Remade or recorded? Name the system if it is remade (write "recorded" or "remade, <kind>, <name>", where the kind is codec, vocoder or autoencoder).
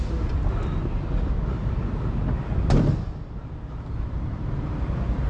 recorded